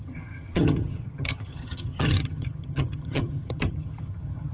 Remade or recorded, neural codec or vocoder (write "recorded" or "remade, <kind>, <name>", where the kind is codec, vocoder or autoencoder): remade, vocoder, HiFi-GAN